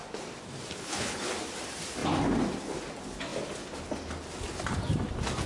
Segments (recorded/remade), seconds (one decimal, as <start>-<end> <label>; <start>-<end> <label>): 0.0-0.8 recorded; 0.8-1.3 remade; 1.3-5.5 recorded